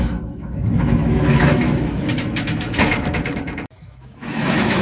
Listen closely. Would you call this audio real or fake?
fake